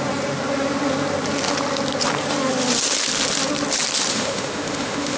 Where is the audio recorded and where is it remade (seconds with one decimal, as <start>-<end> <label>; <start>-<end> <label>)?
0.0-4.1 recorded; 4.1-5.2 remade